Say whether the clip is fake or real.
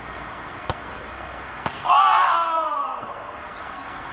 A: fake